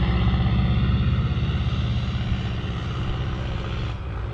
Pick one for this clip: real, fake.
real